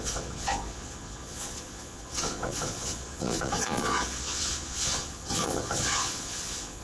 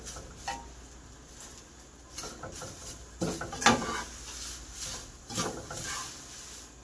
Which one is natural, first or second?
second